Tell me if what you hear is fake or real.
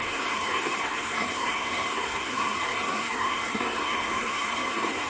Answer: fake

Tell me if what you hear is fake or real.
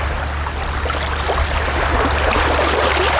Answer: real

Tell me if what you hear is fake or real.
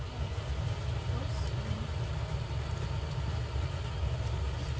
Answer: real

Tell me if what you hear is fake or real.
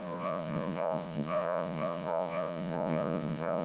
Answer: fake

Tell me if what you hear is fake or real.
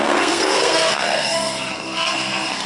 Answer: fake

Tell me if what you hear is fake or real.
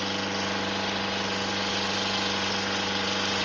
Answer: real